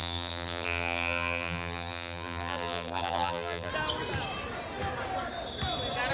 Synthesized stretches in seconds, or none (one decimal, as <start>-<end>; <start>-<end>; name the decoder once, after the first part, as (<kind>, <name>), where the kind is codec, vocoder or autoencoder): 0.0-3.7 (vocoder, BigVGAN v2)